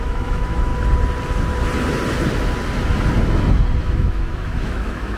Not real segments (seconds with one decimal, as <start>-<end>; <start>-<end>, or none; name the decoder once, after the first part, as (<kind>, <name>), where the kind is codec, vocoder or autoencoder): 0.0-0.7 (autoencoder, DAC-VAE); 3.8-5.2